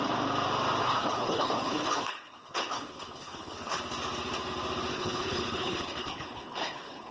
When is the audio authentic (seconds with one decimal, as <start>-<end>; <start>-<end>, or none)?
0.0-0.8; 3.8-4.9